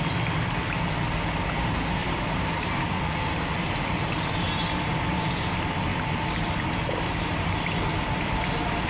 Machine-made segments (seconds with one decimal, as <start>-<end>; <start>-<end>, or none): none